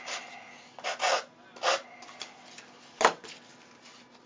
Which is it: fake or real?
real